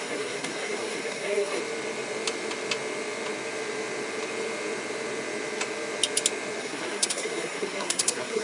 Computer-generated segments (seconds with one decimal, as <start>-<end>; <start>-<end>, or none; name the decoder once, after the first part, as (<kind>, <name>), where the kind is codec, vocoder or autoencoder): 0.0-1.6 (codec, SNAC); 6.6-8.4